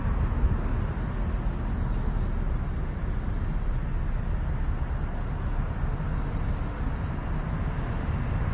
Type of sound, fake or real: real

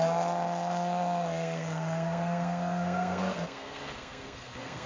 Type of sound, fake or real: fake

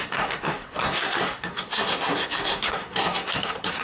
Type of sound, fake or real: fake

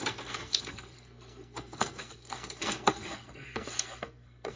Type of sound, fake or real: fake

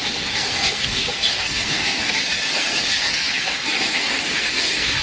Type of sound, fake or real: fake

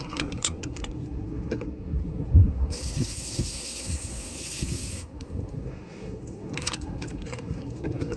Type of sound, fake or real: fake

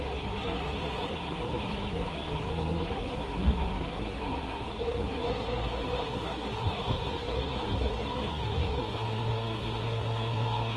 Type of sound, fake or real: fake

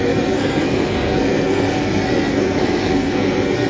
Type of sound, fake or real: fake